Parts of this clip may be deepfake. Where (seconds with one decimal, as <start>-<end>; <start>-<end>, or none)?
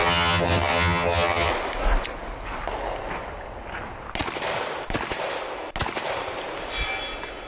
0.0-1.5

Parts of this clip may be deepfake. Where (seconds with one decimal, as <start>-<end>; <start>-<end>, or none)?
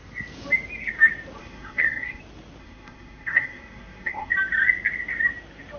1.4-2.2; 2.6-4.3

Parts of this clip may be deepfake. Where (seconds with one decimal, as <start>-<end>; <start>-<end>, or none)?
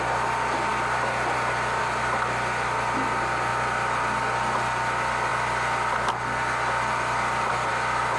none